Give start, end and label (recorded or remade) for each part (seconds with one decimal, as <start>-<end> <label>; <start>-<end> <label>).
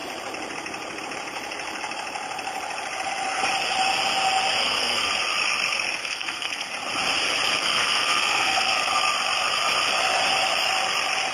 0.0-4.6 recorded; 4.6-5.1 remade; 5.1-6.0 recorded; 6.0-6.7 remade; 6.7-7.6 recorded; 7.6-9.0 remade; 9.0-11.3 recorded